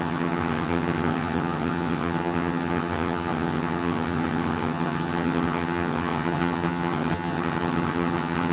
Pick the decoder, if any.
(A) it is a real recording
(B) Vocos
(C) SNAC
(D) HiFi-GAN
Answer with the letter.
D